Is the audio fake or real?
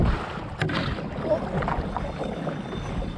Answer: real